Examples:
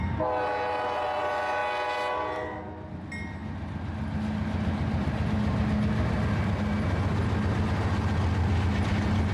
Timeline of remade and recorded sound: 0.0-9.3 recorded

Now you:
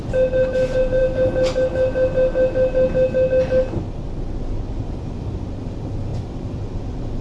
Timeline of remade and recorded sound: 0.0-7.2 recorded

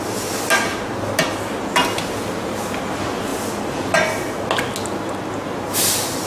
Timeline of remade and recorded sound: 0.0-3.3 recorded; 3.3-4.4 remade; 4.4-6.3 recorded

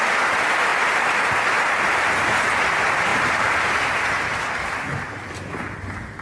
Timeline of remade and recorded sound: 0.0-3.1 recorded; 3.1-3.7 remade; 3.7-6.2 recorded

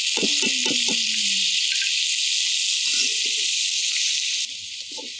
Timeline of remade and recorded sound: 0.0-0.6 recorded; 0.6-2.0 remade; 2.0-5.2 recorded